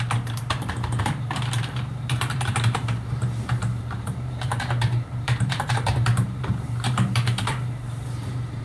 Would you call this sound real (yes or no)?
no